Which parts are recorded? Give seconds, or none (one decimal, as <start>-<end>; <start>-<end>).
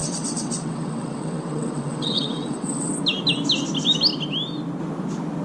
2.9-5.4